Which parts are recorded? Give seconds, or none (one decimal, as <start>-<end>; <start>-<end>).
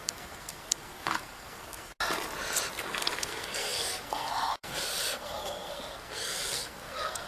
1.9-2.8